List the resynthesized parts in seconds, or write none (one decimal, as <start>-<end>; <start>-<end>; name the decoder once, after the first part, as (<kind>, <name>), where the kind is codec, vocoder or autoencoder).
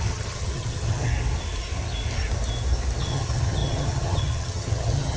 0.0-1.1 (vocoder, HiFi-GAN); 3.0-5.2